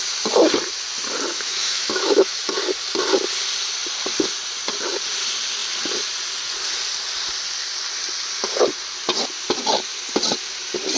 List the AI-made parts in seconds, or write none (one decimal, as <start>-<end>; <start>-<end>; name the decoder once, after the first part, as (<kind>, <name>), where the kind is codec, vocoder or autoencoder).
1.3-2.4 (autoencoder, DAC-VAE)